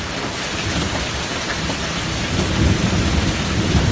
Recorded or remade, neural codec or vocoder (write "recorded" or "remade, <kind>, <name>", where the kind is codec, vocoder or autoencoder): recorded